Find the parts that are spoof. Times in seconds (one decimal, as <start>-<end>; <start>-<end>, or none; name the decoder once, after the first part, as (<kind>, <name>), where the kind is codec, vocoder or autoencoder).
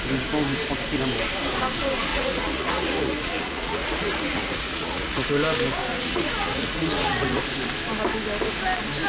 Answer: 2.1-5.3 (vocoder, Vocos); 5.9-7.4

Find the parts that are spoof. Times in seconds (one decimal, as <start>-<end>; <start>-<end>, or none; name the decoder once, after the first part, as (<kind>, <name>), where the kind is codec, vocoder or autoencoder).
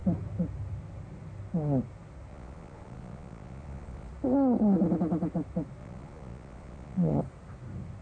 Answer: 2.3-4.1 (vocoder, Vocos); 5.8-7.2